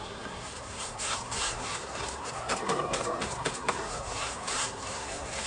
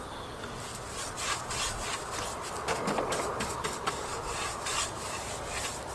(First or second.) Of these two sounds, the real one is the second